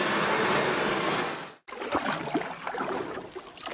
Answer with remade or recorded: recorded